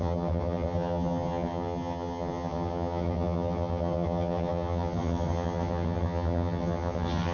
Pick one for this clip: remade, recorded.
remade